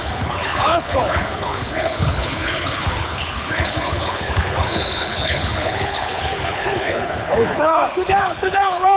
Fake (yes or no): yes